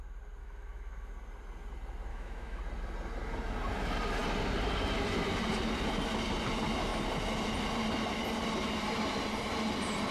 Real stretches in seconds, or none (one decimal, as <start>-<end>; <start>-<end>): 0.0-0.4; 1.1-2.1; 2.6-10.1